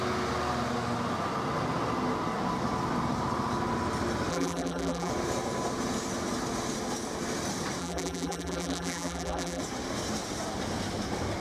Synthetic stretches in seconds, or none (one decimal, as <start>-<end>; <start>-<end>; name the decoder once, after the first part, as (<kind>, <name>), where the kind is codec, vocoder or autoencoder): 4.3-5.1 (vocoder, BigVGAN v2); 7.8-9.6